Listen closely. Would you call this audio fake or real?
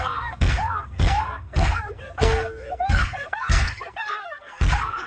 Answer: fake